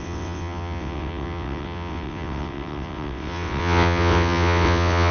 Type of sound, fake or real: fake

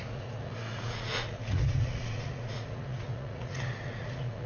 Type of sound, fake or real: fake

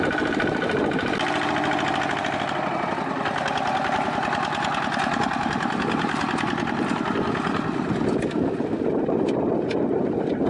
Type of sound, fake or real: real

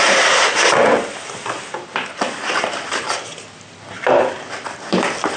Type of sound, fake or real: real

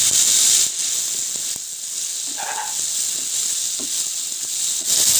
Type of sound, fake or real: real